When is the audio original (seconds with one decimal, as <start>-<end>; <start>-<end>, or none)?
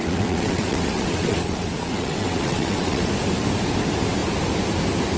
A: 3.1-5.2